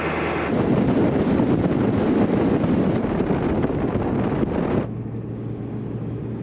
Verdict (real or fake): real